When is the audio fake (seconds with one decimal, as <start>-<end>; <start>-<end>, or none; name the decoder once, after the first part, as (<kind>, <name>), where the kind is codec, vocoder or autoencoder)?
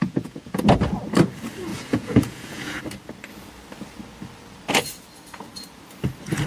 0.0-0.6 (vocoder, Vocos); 1.7-2.8